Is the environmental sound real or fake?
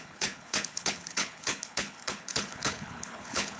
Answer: fake